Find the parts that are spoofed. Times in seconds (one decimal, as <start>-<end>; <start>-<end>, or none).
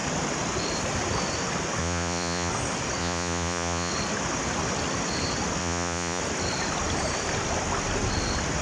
1.8-2.5; 3.0-3.9; 5.6-6.2